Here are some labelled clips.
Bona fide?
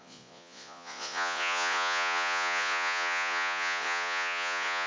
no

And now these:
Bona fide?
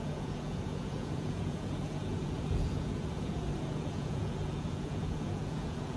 no